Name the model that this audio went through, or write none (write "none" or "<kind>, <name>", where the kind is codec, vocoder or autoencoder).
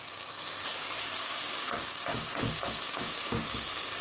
codec, DAC